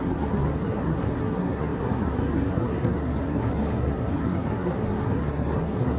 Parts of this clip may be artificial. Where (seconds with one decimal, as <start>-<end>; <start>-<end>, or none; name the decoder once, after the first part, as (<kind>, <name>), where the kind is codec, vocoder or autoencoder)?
0.0-6.0 (codec, SNAC)